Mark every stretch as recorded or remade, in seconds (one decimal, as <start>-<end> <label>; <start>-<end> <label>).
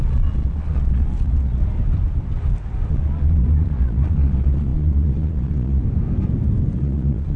0.0-1.6 remade; 1.6-2.9 recorded; 2.9-5.8 remade; 5.8-6.8 recorded; 6.8-7.4 remade